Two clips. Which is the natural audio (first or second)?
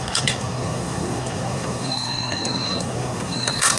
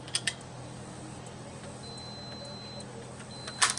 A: second